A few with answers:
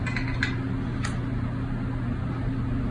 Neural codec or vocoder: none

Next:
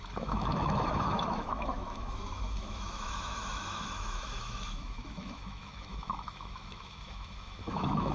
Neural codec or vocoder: autoencoder, DAC-VAE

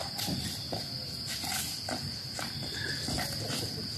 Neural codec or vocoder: none